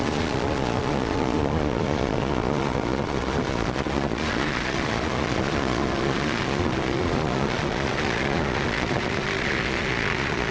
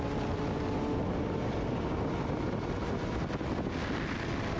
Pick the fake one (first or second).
first